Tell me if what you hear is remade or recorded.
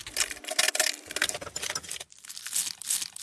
recorded